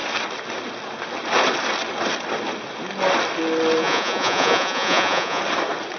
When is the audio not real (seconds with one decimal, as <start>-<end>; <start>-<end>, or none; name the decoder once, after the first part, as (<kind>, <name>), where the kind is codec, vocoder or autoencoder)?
3.8-5.4 (vocoder, Vocos)